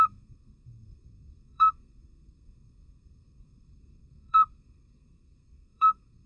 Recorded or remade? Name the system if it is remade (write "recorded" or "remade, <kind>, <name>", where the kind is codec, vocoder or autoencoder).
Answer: remade, codec, SNAC